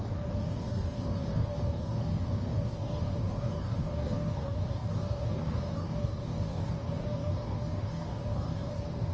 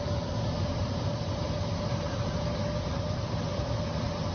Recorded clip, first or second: second